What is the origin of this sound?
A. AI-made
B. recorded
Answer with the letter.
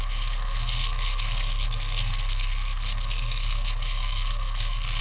A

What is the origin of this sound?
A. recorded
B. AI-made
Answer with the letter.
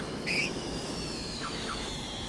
B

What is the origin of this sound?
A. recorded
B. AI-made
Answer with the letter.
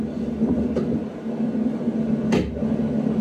A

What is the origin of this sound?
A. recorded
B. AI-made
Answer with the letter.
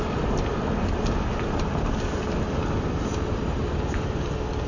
A